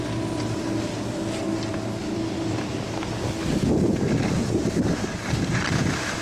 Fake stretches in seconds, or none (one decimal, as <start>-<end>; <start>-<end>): 2.0-2.7